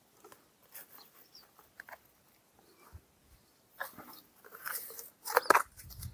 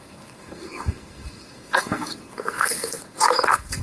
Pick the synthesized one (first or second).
second